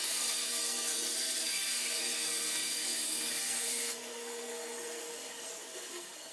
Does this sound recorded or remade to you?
remade